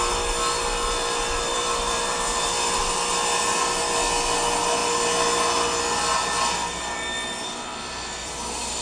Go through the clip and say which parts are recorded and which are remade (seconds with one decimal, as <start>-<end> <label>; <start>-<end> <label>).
0.0-1.5 recorded; 1.5-2.8 remade; 2.8-6.6 recorded; 6.6-8.8 remade